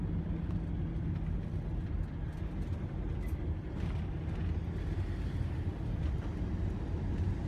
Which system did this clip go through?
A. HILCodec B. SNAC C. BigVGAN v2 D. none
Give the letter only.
D